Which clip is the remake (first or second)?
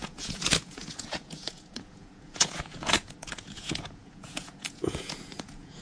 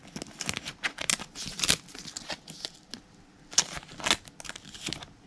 first